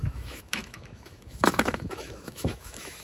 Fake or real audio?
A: fake